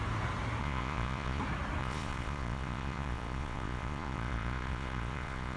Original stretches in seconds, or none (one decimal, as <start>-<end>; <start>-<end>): 0.0-0.6; 1.4-1.8